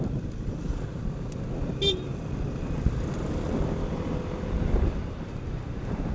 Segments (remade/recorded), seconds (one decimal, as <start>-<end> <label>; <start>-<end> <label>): 0.0-6.1 recorded